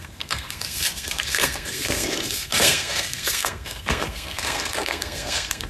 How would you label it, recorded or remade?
remade